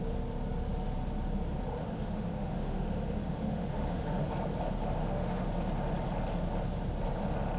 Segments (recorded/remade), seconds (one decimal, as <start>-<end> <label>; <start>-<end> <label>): 0.0-1.8 recorded; 1.8-4.3 remade; 4.3-5.0 recorded; 5.0-5.5 remade; 5.5-7.6 recorded